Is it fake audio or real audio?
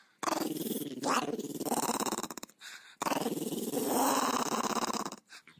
real